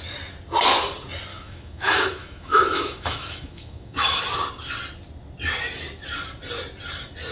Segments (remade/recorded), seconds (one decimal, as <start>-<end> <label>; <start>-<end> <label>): 0.0-1.3 recorded; 1.3-4.2 remade; 4.2-7.3 recorded